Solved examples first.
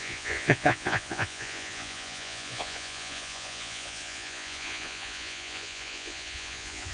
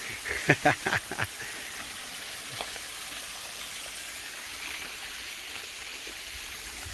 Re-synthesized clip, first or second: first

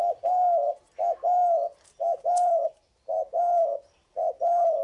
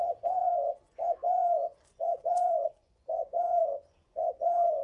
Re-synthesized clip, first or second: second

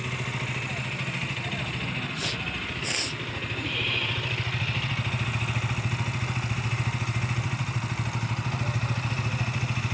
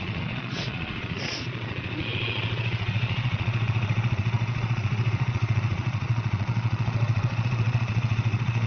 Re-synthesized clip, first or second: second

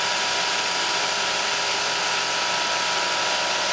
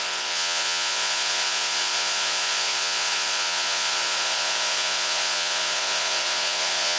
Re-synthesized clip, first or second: second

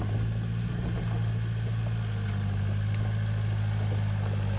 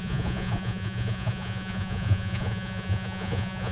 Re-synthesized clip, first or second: second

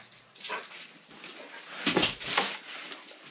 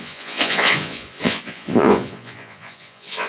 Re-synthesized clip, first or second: second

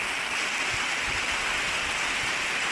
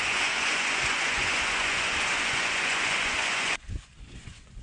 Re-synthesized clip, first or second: second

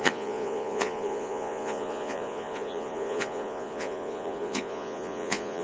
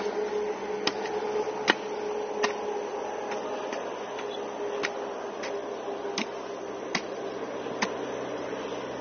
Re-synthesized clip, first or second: first